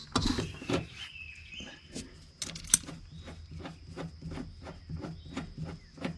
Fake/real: real